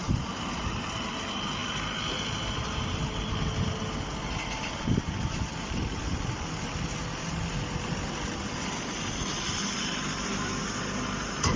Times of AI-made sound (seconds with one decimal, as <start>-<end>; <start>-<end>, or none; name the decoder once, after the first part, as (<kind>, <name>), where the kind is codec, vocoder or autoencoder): none